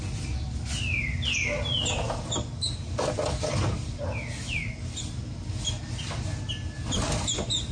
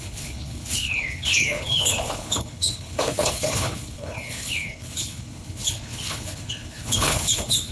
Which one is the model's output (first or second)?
second